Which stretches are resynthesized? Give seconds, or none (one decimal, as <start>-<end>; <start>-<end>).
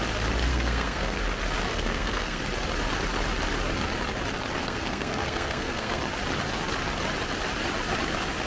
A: 0.5-1.2; 1.7-2.4; 4.6-6.0